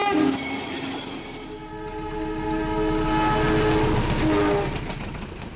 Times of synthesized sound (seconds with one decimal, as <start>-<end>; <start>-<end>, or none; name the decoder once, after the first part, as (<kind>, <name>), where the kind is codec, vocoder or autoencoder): none